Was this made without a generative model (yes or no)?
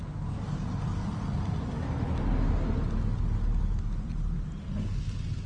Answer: yes